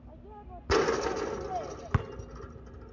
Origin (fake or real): real